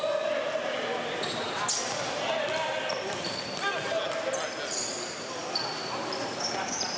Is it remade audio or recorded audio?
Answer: recorded